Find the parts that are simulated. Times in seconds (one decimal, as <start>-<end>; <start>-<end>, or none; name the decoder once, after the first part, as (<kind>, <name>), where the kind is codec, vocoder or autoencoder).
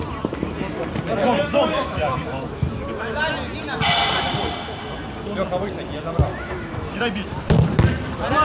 1.5-2.5 (autoencoder, DAC-VAE); 6.3-7.0